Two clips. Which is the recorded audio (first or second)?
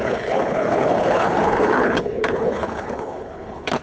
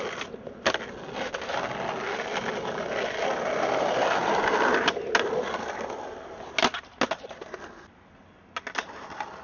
second